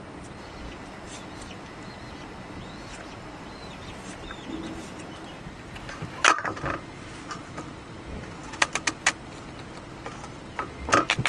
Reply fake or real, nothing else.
real